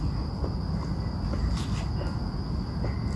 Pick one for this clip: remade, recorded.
recorded